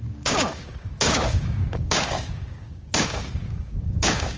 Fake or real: fake